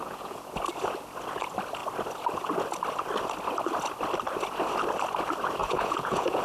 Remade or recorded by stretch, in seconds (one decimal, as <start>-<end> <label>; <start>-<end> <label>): 0.0-0.5 remade; 0.5-5.6 recorded; 5.6-6.4 remade